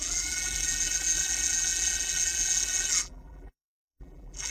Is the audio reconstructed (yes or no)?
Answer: yes